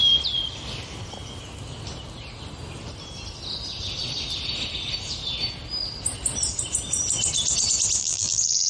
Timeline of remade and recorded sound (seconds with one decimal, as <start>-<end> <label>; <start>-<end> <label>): 0.0-8.0 recorded; 8.0-8.7 remade